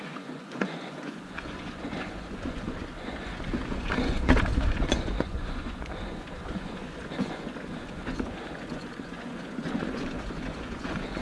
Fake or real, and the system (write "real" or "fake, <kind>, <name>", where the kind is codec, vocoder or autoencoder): fake, vocoder, Vocos